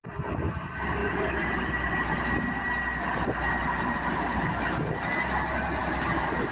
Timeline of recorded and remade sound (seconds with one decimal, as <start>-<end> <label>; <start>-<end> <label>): 0.0-6.5 recorded

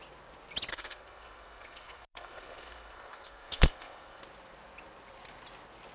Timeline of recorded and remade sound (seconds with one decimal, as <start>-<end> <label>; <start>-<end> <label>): 0.0-0.7 recorded; 0.7-4.2 remade; 4.2-5.9 recorded

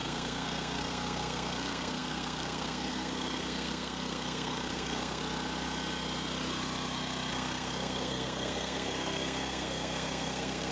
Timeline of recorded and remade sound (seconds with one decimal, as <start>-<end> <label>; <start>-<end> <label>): 0.0-5.2 remade; 5.2-7.3 recorded; 7.3-10.7 remade

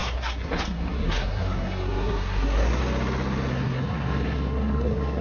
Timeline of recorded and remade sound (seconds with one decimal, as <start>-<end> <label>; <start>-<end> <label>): 0.0-2.8 remade; 2.8-3.5 recorded; 3.5-5.2 remade